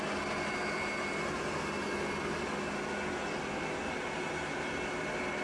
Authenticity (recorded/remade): recorded